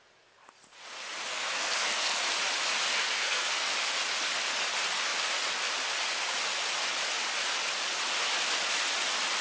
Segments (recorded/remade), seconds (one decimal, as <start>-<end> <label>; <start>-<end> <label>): 0.0-1.3 recorded; 1.3-2.2 remade; 2.2-2.9 recorded; 2.9-3.7 remade; 3.7-9.4 recorded